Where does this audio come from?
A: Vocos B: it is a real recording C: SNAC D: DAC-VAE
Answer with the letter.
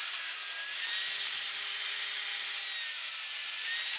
B